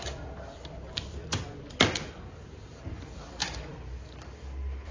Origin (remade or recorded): remade